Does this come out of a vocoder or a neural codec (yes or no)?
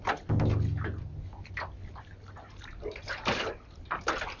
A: no